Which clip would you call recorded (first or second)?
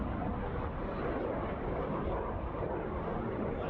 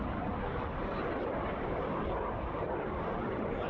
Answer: first